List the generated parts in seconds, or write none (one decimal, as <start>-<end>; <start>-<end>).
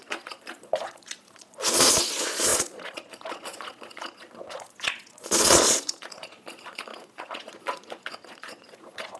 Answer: 0.0-9.2